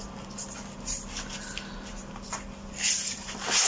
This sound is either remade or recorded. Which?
recorded